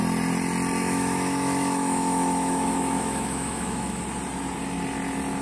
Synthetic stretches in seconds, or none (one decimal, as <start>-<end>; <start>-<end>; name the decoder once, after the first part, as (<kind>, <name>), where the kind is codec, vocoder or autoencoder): 0.8-4.0 (autoencoder, DAC-VAE)